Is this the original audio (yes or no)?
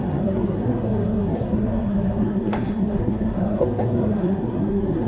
no